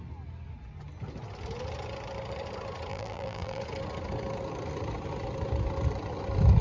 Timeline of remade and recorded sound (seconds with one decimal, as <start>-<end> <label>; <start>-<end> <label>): 0.0-2.9 recorded; 2.9-3.6 remade; 3.6-6.6 recorded